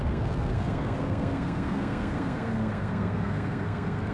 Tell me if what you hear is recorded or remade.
remade